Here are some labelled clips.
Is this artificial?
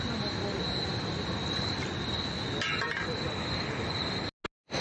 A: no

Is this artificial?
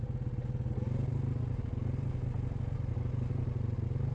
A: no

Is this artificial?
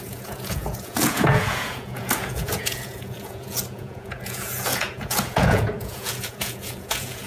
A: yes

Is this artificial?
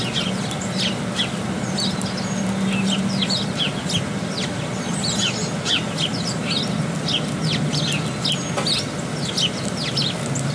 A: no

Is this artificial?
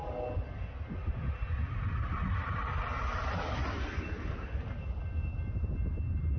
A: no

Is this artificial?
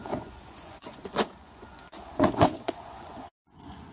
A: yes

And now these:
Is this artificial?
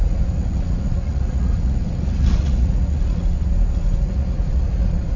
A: yes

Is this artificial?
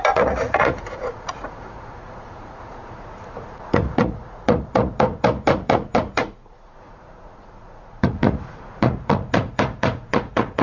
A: yes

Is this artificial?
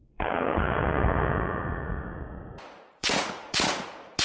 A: yes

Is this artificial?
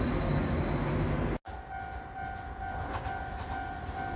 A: no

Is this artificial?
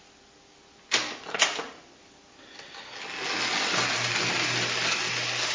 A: no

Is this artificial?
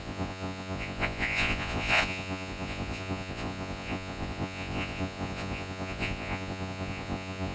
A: yes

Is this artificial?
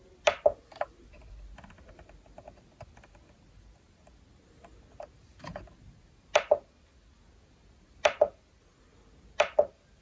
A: no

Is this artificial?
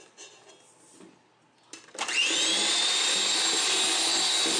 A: no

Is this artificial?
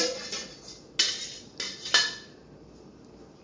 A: no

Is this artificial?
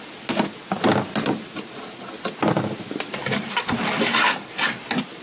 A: no